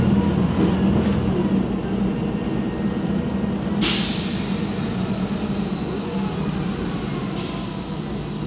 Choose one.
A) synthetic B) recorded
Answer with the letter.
B